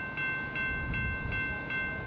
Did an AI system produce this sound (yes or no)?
no